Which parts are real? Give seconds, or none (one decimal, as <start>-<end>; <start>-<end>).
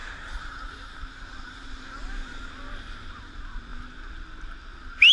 0.0-5.1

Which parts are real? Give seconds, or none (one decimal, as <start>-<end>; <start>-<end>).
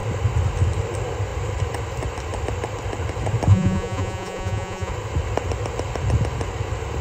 0.0-3.5; 4.9-7.0